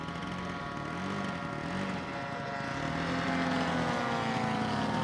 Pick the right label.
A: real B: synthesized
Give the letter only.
A